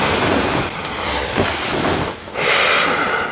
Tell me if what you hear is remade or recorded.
recorded